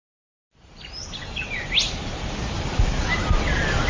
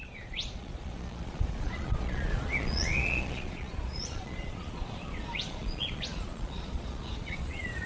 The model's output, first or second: second